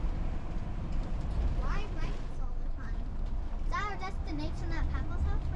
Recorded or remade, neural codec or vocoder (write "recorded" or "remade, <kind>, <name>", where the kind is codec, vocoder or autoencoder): recorded